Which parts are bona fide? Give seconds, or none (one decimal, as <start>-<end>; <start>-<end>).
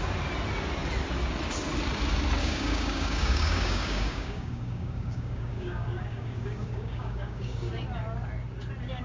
0.0-2.4; 7.7-9.0